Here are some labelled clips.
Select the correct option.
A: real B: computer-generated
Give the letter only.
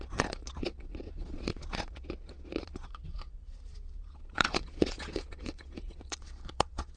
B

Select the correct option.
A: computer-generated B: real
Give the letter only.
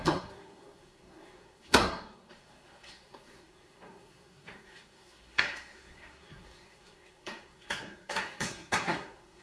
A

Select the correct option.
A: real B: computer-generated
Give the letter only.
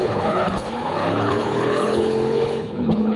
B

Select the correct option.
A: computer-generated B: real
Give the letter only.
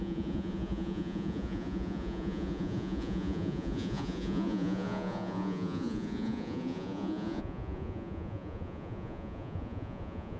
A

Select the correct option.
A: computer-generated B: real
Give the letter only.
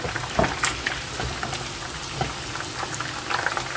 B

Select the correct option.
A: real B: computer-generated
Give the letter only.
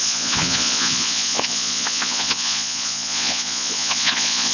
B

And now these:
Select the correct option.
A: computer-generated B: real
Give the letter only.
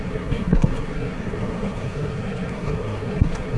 A